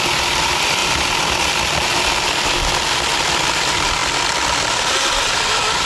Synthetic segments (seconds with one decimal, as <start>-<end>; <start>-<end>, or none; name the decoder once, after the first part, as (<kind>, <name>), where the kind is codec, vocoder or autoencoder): none